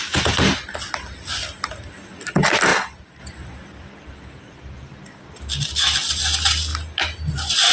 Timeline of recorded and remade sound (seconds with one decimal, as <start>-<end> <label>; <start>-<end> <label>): 0.0-7.7 recorded